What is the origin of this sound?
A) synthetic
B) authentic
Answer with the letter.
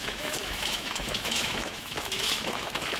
A